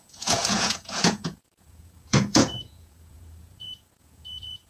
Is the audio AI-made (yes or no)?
yes